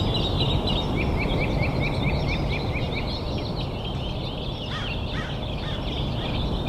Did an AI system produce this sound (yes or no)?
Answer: no